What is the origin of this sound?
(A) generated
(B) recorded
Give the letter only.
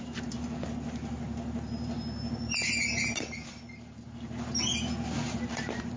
B